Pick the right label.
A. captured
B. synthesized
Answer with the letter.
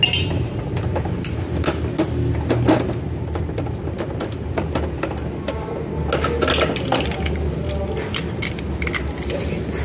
A